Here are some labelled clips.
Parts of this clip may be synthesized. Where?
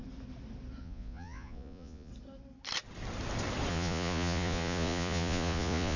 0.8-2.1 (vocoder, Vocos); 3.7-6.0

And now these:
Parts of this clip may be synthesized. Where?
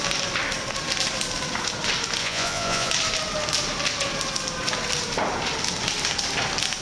2.2-2.9 (vocoder, Vocos)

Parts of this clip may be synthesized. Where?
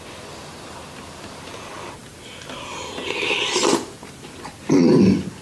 none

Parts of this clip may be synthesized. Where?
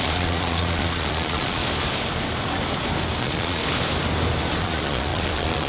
0.0-1.6 (vocoder, Vocos); 3.2-3.6; 4.6-5.7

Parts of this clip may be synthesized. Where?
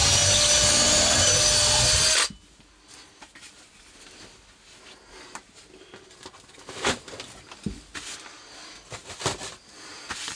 none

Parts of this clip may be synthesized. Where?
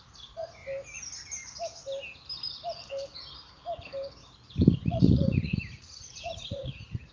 0.0-0.6 (vocoder, Vocos); 4.9-7.1